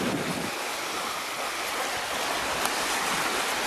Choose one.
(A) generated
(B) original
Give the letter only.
B